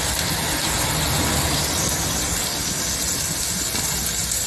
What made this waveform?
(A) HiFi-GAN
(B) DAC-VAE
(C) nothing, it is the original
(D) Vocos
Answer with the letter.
C